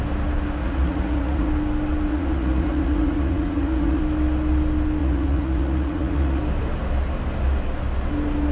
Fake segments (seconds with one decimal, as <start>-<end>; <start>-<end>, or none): 0.6-1.5; 2.1-4.0; 5.0-6.4